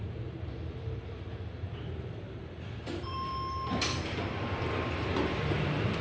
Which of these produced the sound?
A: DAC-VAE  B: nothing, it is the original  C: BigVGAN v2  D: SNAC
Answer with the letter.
C